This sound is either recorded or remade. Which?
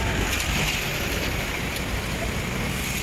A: remade